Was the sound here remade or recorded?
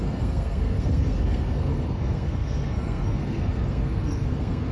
remade